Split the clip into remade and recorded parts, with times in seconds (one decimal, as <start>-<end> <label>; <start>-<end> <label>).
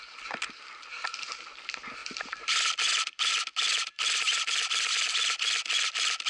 0.0-2.0 recorded; 2.0-3.3 remade; 3.3-3.8 recorded; 3.8-4.9 remade; 4.9-6.3 recorded